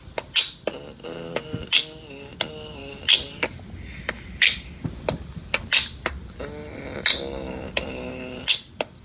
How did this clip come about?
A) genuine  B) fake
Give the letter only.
A